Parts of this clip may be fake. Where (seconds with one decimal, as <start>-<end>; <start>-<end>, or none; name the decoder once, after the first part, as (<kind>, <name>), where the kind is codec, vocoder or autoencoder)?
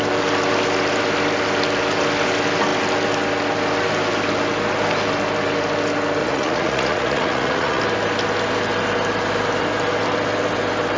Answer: 6.2-7.8 (vocoder, Vocos)